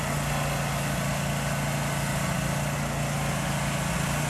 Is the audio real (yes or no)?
yes